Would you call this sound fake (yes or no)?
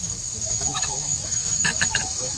yes